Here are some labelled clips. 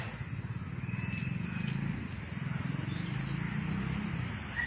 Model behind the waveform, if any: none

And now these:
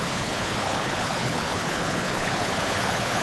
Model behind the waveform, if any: codec, HILCodec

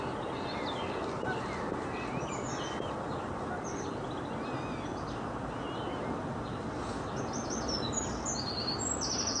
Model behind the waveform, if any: none